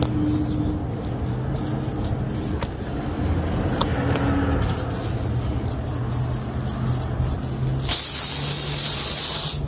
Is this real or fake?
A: real